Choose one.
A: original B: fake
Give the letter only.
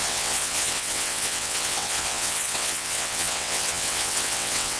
B